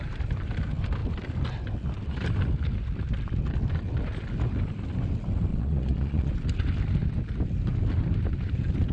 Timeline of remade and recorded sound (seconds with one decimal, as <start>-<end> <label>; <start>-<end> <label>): 0.0-5.5 recorded; 5.5-6.3 remade; 6.3-8.9 recorded